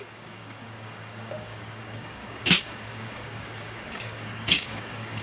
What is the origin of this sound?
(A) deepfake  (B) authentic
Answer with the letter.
A